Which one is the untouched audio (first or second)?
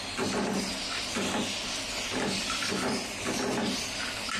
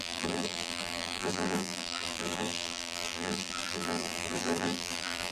first